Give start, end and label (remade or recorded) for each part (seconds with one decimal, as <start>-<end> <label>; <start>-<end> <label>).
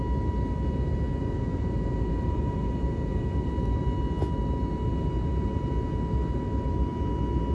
0.0-1.2 recorded; 1.2-3.5 remade; 3.5-7.5 recorded